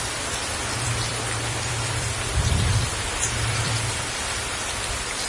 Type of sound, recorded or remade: remade